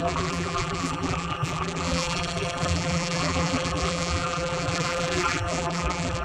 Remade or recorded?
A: remade